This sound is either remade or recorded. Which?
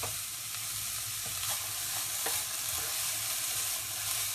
recorded